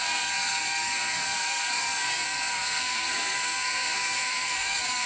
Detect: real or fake fake